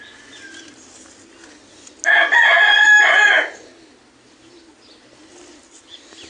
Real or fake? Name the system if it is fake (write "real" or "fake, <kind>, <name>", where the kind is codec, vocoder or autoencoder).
real